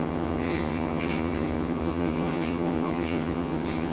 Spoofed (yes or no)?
yes